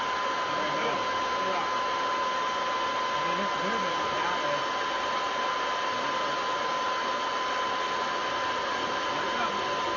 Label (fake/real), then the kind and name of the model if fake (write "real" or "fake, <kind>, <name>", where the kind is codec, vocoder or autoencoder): real